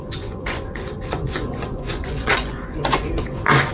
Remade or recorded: remade